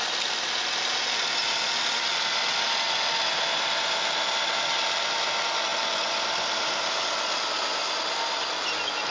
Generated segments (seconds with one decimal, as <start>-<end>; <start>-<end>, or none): none